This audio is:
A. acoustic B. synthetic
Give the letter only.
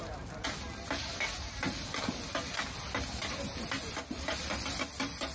A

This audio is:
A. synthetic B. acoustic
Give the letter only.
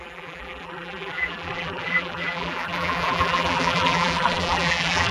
A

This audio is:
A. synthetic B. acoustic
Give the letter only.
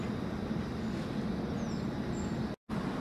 B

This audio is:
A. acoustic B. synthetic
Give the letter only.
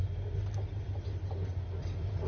A